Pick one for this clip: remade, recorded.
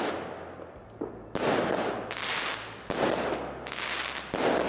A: recorded